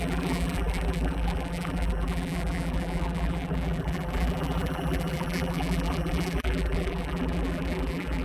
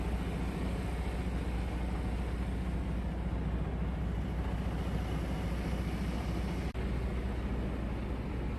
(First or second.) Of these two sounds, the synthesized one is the first